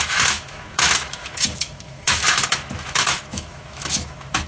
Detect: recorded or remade remade